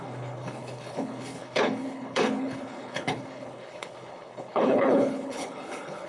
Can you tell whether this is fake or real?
fake